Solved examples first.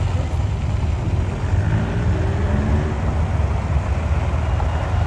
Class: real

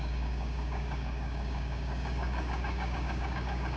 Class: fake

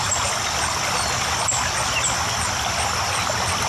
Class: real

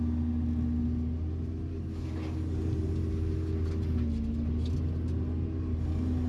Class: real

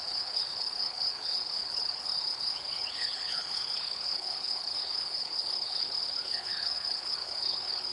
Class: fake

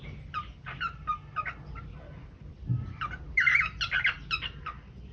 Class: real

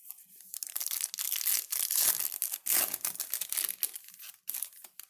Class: real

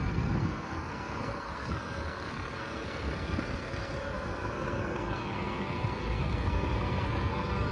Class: fake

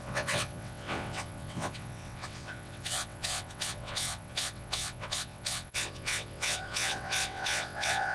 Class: fake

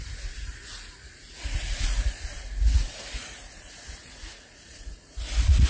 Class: fake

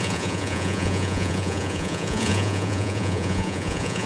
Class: fake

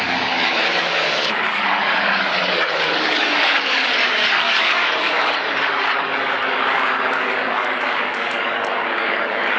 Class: fake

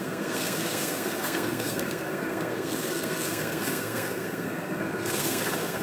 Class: fake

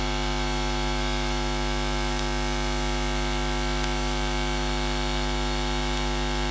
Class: fake